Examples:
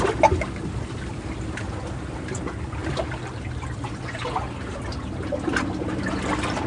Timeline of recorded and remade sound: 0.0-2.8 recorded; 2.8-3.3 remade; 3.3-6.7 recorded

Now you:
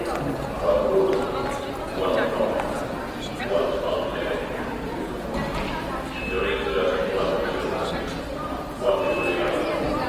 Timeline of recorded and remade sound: 0.0-4.1 recorded; 4.1-5.0 remade; 5.0-10.1 recorded

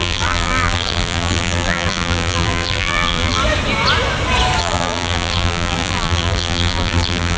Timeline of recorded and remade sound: 0.0-3.4 remade; 3.4-4.6 recorded; 4.6-7.4 remade

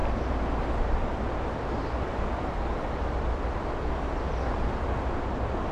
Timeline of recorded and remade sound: 0.0-0.6 remade; 0.6-1.1 recorded; 1.1-1.6 remade; 1.6-2.1 recorded; 2.1-3.6 remade; 3.6-5.7 recorded

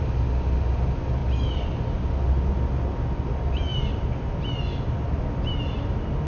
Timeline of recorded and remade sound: 0.0-6.3 recorded